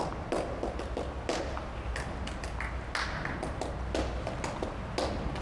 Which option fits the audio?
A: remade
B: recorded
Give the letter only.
B